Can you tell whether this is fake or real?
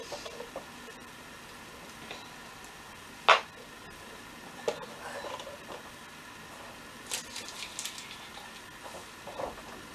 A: real